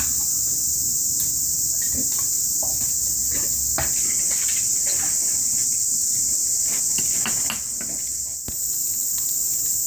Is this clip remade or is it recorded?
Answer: recorded